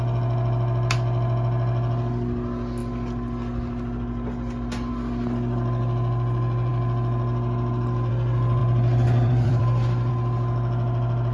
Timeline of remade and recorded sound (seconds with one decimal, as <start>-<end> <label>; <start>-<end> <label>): 0.0-8.6 recorded; 8.6-10.1 remade; 10.1-11.3 recorded